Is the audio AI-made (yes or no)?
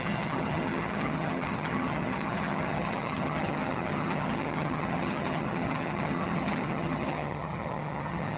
yes